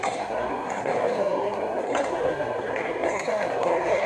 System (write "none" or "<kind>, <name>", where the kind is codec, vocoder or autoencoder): codec, SNAC